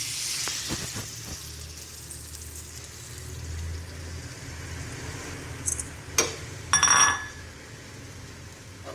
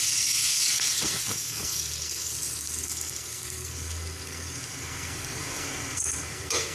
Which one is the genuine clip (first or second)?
first